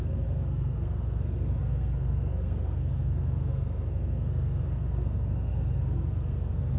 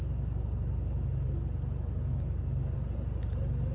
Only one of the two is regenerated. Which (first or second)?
first